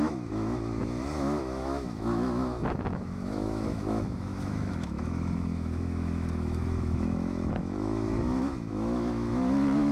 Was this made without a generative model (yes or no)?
no